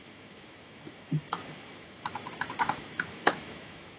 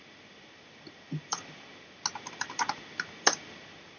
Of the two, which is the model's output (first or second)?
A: first